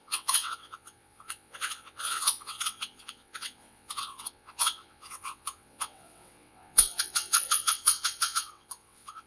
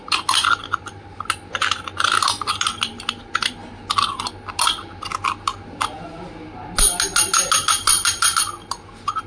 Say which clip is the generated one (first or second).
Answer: first